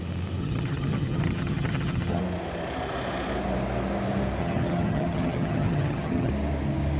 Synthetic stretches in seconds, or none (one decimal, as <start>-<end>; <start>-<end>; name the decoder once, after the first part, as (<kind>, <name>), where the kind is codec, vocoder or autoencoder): 0.4-2.2 (vocoder, HiFi-GAN); 4.4-6.3